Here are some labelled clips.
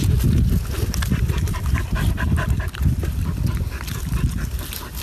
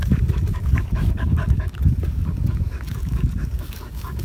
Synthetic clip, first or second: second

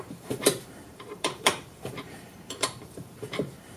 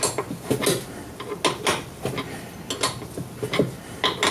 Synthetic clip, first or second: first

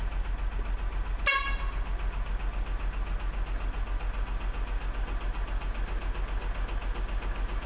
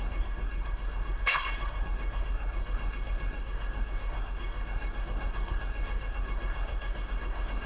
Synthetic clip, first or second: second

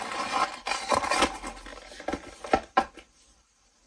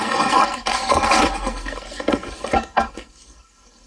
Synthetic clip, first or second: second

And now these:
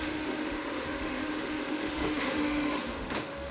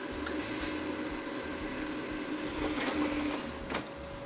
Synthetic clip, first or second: first